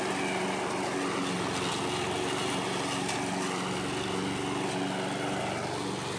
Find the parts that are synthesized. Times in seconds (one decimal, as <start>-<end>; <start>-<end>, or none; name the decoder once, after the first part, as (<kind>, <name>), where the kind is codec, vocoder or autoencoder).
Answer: none